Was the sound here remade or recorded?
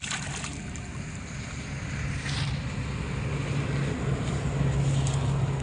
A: recorded